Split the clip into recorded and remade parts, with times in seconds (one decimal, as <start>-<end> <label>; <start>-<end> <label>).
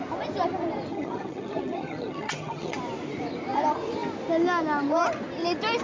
0.0-0.9 recorded; 0.9-2.8 remade; 2.8-5.8 recorded